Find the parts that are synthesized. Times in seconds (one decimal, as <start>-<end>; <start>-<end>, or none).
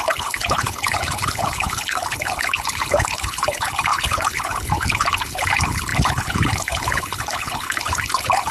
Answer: 0.0-8.5